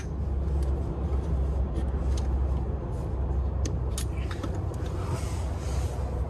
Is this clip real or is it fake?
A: real